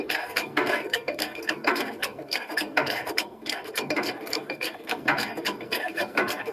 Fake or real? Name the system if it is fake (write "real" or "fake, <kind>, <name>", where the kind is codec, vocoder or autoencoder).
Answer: fake, codec, SNAC